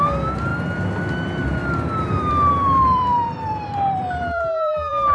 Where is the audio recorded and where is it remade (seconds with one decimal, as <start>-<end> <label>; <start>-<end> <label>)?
0.0-1.6 recorded; 1.6-5.1 remade